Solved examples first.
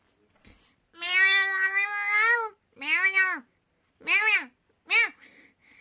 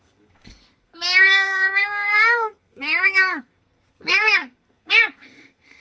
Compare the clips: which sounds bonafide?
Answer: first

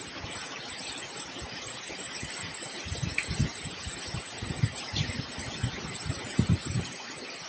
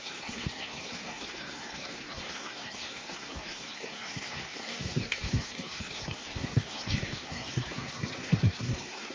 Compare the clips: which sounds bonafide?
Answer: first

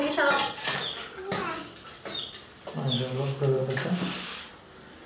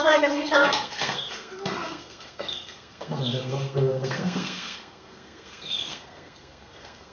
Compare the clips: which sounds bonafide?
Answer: first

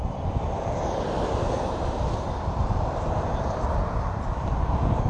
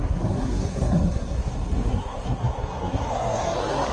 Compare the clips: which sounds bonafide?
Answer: first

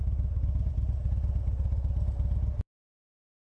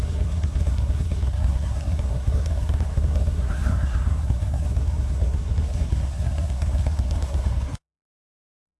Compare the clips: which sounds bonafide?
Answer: first